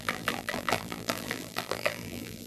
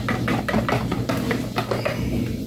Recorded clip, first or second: second